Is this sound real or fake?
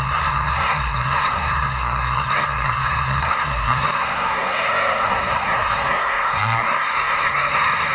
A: fake